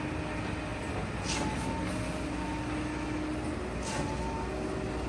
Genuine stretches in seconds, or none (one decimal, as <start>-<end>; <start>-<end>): 0.0-5.1